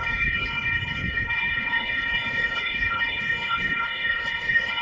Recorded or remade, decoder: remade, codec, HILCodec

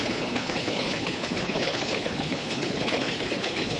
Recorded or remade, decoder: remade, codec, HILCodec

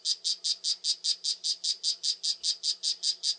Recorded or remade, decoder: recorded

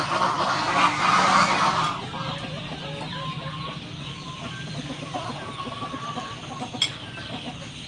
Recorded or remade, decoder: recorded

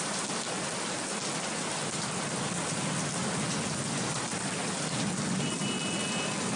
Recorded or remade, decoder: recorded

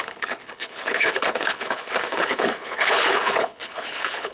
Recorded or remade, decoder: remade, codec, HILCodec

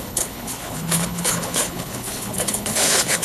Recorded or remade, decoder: remade, codec, HILCodec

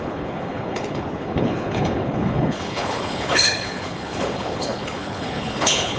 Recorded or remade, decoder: remade, codec, HILCodec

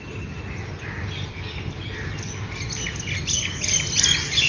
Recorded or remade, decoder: recorded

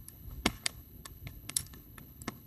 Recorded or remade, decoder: remade, codec, HILCodec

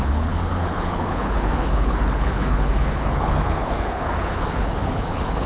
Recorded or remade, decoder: remade, codec, HILCodec